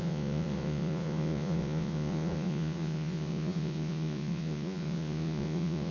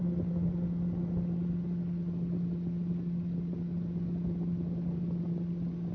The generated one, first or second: first